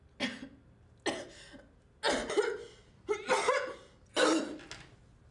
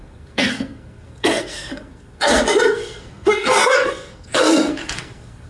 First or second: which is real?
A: first